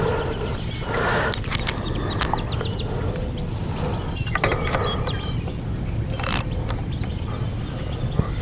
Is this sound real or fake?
real